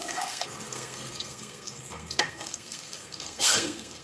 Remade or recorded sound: remade